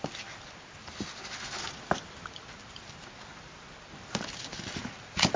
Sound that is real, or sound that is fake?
real